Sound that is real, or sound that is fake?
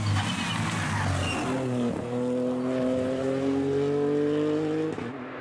real